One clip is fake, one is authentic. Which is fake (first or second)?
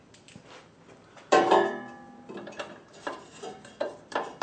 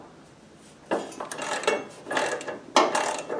first